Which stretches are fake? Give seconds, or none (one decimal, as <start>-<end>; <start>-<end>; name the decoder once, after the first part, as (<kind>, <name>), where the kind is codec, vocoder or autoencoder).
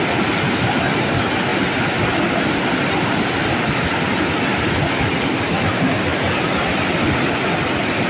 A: none